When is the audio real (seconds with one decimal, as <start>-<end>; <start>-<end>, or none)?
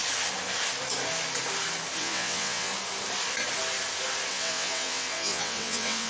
0.0-2.0; 2.7-4.3